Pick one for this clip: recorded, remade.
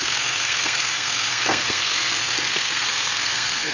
remade